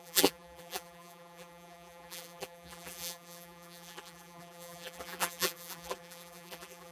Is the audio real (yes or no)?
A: no